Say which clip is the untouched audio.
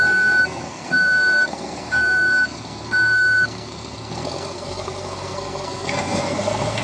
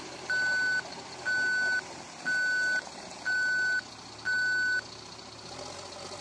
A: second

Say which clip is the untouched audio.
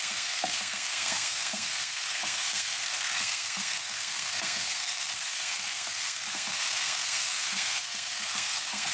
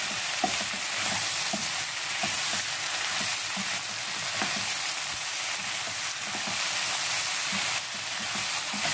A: second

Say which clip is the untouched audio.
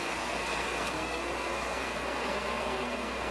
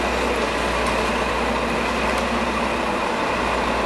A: second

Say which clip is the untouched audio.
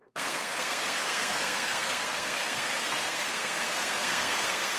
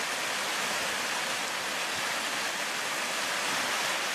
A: second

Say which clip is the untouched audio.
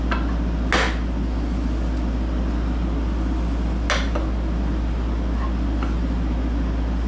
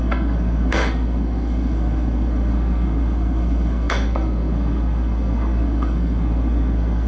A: first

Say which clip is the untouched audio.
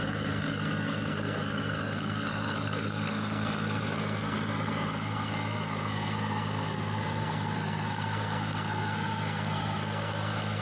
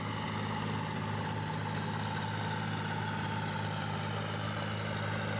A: second